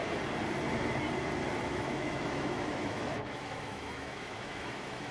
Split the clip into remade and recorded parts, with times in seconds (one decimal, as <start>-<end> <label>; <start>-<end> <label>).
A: 0.0-1.7 recorded; 1.7-5.1 remade